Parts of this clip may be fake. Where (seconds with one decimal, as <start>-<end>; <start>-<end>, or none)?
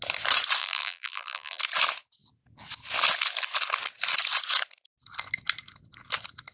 0.6-1.6